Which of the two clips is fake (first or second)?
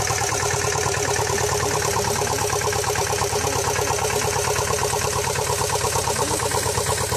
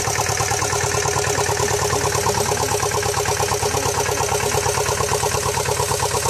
first